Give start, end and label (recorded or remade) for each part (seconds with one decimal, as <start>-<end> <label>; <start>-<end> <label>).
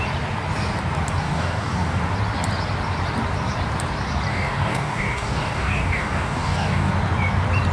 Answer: 0.0-1.2 recorded; 1.2-2.0 remade; 2.0-4.3 recorded; 4.3-6.9 remade; 6.9-7.7 recorded